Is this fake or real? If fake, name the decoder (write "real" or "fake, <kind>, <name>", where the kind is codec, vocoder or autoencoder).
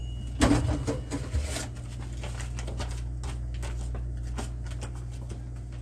real